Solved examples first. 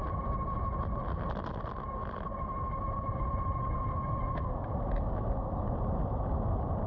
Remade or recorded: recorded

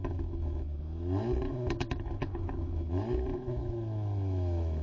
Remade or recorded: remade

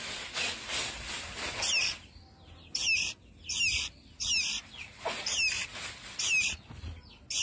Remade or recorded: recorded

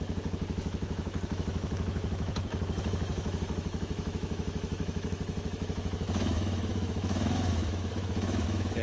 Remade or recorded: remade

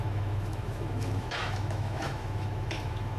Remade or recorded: remade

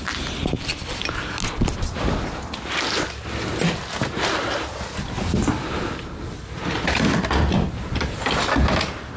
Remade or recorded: recorded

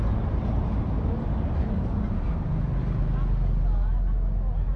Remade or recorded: recorded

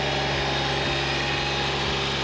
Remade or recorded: recorded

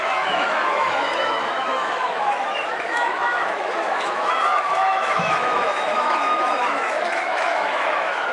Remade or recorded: remade